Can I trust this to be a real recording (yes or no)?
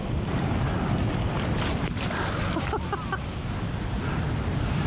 yes